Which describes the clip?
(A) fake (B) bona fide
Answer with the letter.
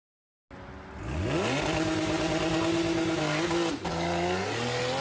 B